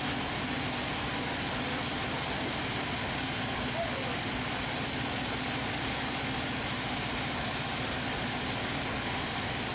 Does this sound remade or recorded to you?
recorded